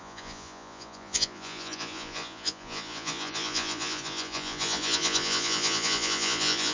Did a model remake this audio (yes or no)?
yes